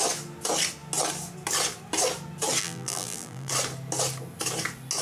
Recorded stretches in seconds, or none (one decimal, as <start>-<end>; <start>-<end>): 0.0-2.6; 3.5-5.0